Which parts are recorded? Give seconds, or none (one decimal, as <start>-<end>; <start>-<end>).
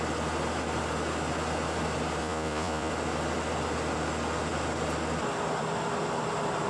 0.0-2.2; 2.9-6.7